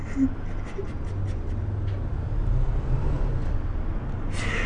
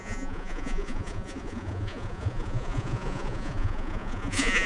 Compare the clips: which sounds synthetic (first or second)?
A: second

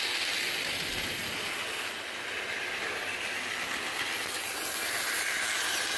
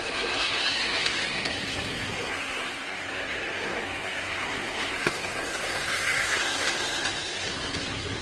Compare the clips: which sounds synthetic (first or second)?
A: second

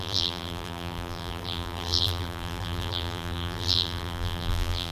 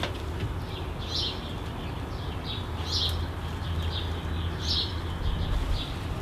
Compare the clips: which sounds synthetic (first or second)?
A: first